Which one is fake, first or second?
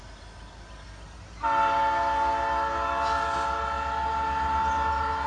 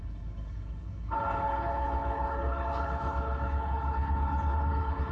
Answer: second